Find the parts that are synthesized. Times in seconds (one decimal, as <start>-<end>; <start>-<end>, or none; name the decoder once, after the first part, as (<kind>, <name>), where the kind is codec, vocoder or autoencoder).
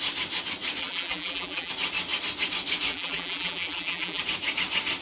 0.8-1.7 (vocoder, BigVGAN v2); 2.9-4.2